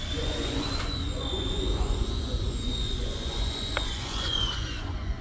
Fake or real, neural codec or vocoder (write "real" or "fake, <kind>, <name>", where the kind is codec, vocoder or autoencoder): fake, vocoder, Vocos